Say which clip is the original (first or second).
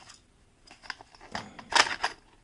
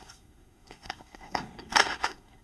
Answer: first